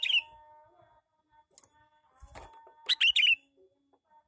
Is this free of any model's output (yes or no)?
yes